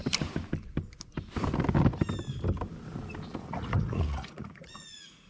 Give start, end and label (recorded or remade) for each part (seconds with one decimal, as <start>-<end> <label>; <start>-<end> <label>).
0.0-3.3 recorded; 3.3-5.3 remade